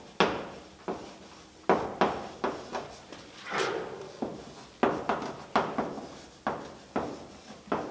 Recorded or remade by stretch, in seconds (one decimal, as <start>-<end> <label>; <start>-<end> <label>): 0.0-7.9 recorded